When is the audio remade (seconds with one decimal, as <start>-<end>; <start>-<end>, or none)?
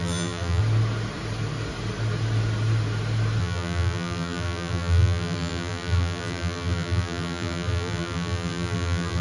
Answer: 0.0-0.6; 3.4-9.2